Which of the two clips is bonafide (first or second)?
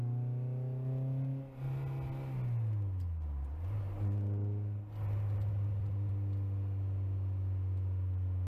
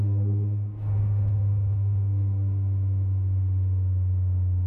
first